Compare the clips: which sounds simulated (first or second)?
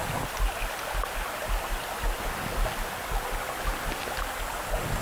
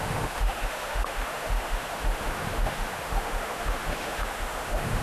second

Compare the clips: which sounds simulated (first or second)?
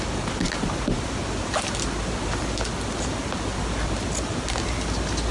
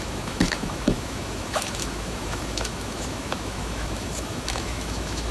second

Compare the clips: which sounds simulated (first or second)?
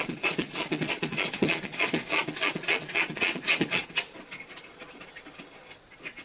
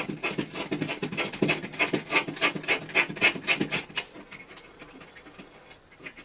first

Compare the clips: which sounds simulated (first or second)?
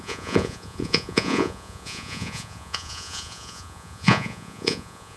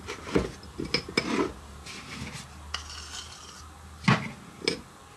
first